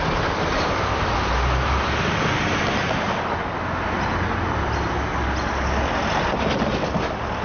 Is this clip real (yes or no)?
yes